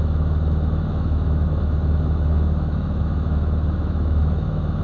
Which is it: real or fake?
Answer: fake